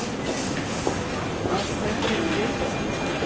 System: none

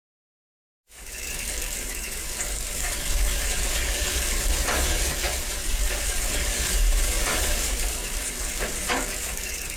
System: codec, DAC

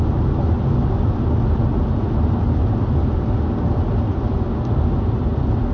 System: none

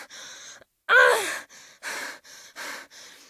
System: none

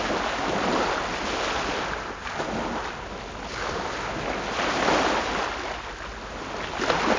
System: none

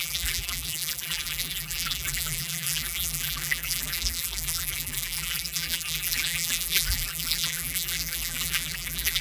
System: vocoder, BigVGAN v2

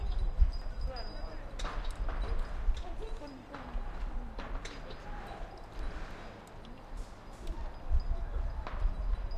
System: none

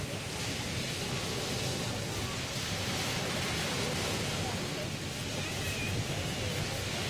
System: none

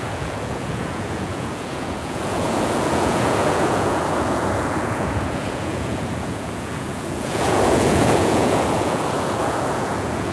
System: vocoder, Vocos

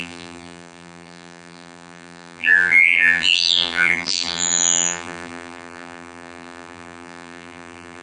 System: vocoder, BigVGAN v2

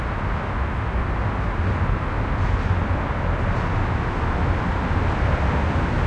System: none